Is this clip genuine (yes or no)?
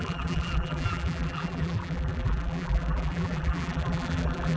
no